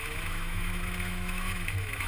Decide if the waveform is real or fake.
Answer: fake